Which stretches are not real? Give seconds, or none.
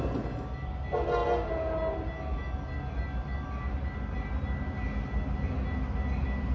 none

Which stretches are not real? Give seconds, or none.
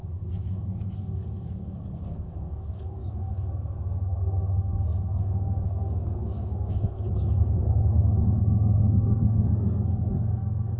0.0-10.8 (codec, SNAC)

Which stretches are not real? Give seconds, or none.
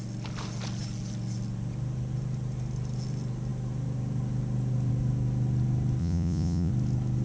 6.0-6.7 (vocoder, Vocos)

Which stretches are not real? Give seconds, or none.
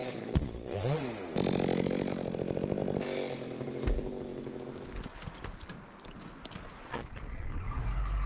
0.0-1.0 (vocoder, Vocos); 6.8-7.8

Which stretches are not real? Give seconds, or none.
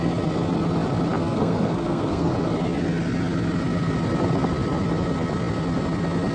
1.2-2.3 (codec, SNAC)